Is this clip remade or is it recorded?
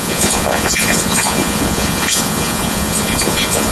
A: remade